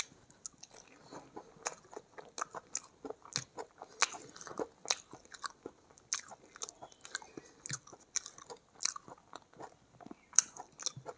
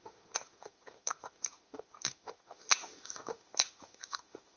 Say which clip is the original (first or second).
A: first